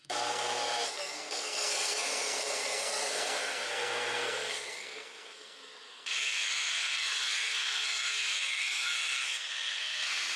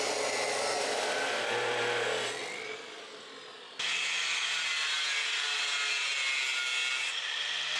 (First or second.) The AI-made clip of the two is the first